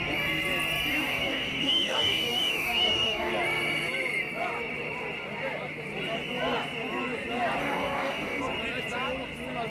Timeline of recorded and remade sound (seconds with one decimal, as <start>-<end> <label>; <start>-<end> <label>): 0.0-0.9 recorded; 0.9-3.3 remade; 3.3-7.6 recorded; 7.6-8.4 remade; 8.4-9.7 recorded